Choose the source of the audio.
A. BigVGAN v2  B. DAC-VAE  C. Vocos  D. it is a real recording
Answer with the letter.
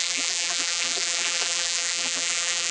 A